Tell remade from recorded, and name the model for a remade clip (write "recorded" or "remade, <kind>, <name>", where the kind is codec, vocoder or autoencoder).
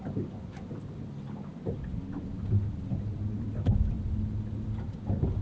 recorded